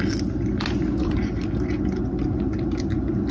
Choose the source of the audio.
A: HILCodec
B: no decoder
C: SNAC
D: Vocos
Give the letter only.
B